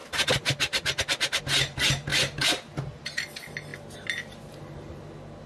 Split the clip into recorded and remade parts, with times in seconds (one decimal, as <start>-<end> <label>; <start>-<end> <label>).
0.0-3.7 recorded; 3.7-4.5 remade; 4.5-5.5 recorded

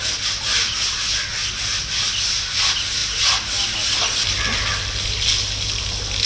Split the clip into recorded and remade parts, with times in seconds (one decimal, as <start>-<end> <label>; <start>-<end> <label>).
0.0-6.3 recorded

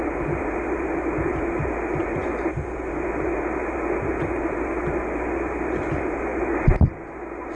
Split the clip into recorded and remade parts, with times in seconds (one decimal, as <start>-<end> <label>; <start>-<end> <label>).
0.0-7.6 recorded

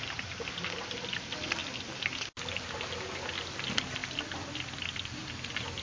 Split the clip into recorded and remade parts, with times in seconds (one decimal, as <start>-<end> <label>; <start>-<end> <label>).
0.0-5.8 recorded

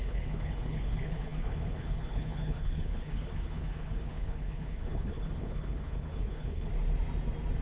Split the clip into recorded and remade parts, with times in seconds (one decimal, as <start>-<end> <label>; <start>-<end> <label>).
0.0-6.7 remade; 6.7-7.6 recorded